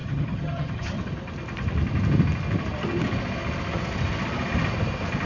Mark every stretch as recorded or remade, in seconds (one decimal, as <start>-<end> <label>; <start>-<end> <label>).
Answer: 0.0-1.0 remade; 1.0-5.3 recorded